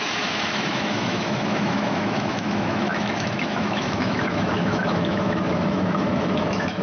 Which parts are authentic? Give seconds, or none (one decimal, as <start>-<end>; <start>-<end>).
none